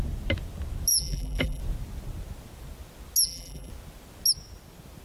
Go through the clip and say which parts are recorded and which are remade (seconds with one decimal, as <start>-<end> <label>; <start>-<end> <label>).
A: 0.0-0.9 recorded; 0.9-1.6 remade; 1.6-3.2 recorded; 3.2-3.7 remade; 3.7-5.0 recorded